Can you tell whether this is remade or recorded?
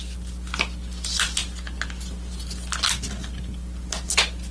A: recorded